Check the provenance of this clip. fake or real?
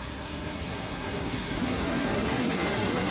fake